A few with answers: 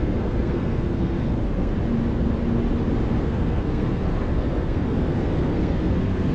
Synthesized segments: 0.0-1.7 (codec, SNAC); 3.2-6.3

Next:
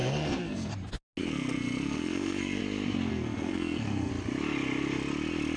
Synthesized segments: 0.0-0.7 (codec, SNAC); 1.2-2.6; 3.1-4.1